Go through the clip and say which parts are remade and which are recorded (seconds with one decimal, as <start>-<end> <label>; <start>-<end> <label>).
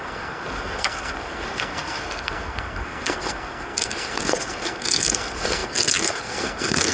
0.0-6.9 remade